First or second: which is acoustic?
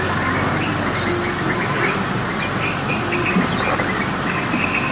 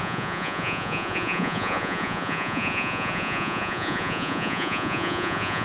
first